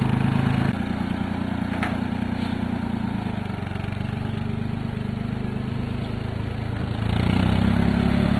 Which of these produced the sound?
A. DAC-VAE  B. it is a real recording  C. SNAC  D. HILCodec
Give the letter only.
B